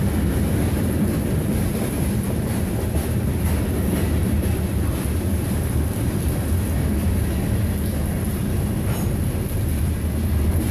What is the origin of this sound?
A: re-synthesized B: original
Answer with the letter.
B